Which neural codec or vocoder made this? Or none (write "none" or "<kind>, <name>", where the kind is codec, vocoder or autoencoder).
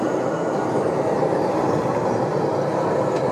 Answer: none